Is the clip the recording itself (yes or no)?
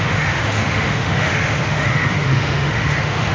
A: no